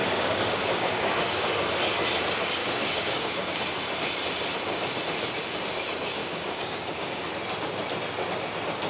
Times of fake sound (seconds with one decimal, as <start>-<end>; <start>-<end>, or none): 0.0-1.6; 2.6-3.6; 6.2-7.3